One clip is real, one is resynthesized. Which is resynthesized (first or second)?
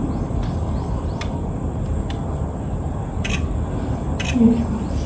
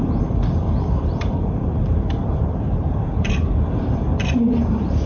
second